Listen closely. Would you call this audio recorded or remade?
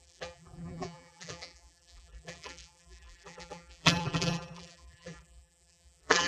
remade